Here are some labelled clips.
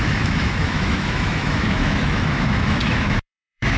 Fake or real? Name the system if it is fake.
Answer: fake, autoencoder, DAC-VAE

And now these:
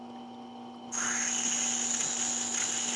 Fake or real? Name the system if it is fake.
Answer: real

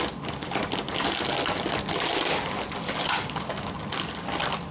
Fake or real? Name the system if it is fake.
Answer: real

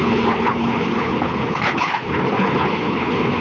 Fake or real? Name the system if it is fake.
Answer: fake, codec, HILCodec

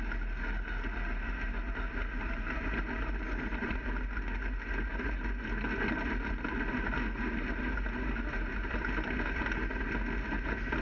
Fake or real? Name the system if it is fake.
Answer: real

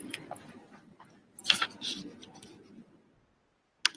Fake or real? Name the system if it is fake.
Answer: real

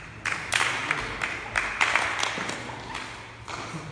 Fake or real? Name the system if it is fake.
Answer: real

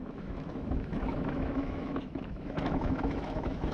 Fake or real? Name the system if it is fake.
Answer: fake, autoencoder, DAC-VAE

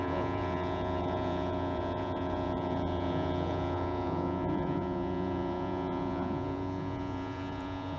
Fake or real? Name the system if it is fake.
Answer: fake, vocoder, Vocos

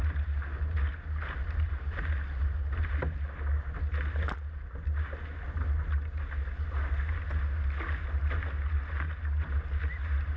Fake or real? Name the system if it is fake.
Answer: real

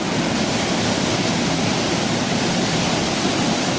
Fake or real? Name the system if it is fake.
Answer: real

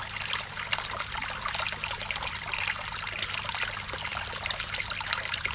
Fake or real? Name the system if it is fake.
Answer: real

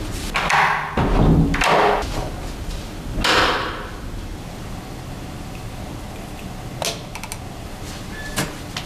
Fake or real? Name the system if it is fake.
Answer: real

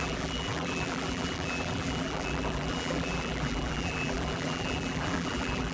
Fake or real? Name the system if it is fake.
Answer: fake, vocoder, BigVGAN v2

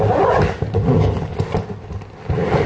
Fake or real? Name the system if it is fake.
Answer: real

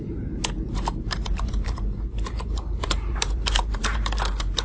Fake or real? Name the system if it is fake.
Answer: fake, vocoder, BigVGAN v2